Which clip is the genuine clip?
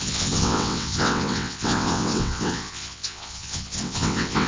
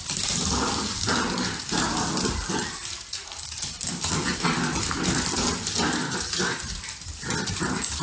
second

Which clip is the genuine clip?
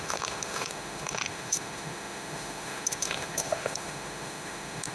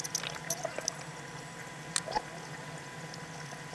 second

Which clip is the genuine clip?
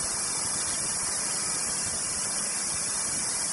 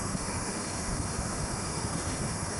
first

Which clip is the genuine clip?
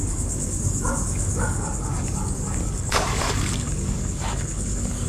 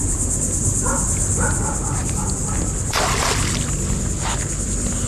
second